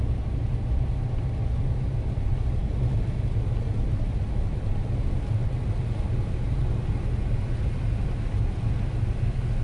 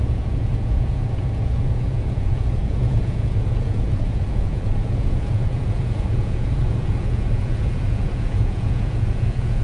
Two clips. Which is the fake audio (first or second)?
second